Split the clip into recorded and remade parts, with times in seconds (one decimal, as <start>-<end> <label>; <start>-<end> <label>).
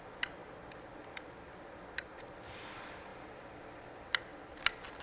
0.0-5.0 recorded